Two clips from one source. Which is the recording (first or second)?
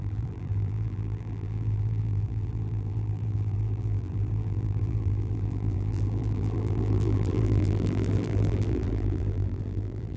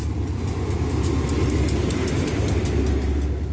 second